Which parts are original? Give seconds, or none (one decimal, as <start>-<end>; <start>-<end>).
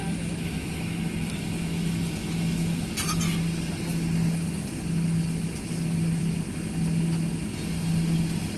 2.9-8.6